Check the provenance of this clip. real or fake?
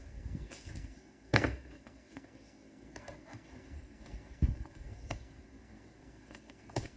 fake